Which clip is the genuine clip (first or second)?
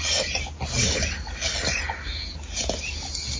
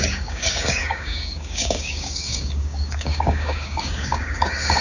first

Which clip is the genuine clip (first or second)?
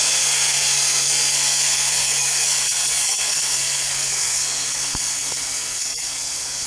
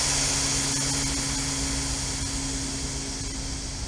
second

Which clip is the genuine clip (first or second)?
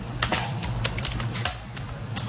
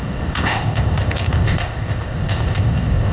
first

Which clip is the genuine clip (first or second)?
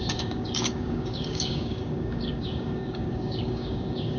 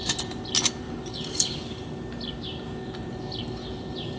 second